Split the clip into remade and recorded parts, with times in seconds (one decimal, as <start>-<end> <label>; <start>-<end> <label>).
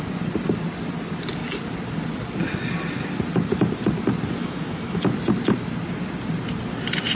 0.0-4.4 recorded; 4.4-5.0 remade; 5.0-7.1 recorded